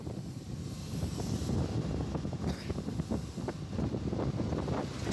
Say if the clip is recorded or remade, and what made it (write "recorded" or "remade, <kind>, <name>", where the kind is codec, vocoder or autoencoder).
recorded